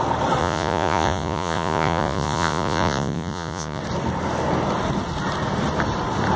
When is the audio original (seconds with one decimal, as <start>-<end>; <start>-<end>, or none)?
0.0-0.4; 3.8-6.4